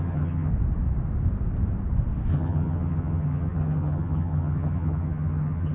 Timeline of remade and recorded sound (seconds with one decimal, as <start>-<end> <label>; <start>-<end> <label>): 0.0-0.5 remade; 0.5-2.3 recorded; 2.3-5.7 remade